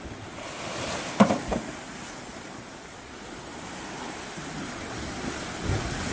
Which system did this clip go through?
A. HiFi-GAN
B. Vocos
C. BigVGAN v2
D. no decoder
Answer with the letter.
D